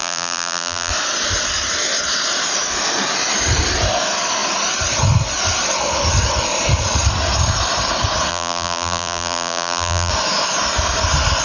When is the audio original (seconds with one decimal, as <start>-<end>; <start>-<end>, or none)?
0.9-8.3; 10.1-11.4